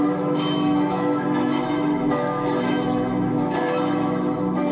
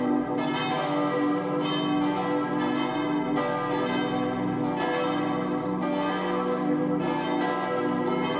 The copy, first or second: first